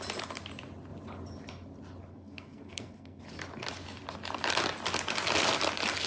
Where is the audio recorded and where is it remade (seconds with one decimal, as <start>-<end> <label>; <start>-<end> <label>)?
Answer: 0.0-2.1 recorded; 2.1-3.2 remade; 3.2-6.1 recorded